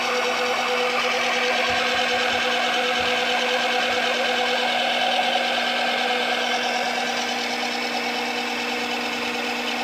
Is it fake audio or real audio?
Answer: real